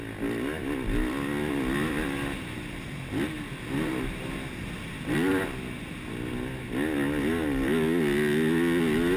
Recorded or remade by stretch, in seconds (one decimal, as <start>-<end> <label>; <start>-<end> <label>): 0.0-9.2 recorded